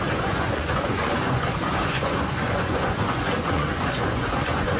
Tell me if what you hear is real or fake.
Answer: fake